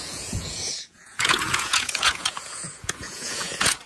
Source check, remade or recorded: remade